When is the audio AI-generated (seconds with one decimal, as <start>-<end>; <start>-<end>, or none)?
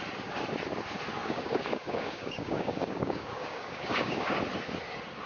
1.2-4.4